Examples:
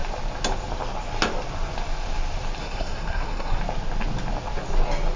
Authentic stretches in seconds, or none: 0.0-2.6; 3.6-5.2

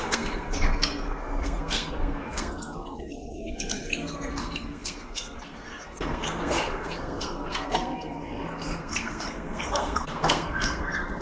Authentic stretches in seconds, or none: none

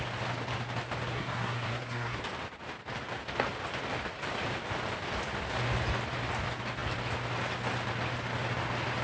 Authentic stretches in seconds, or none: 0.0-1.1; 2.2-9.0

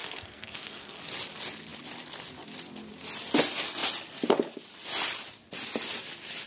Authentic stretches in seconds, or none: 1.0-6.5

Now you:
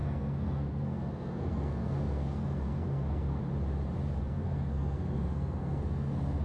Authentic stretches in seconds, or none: 3.4-4.2